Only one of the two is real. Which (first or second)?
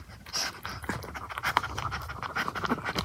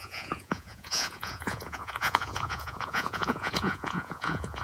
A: first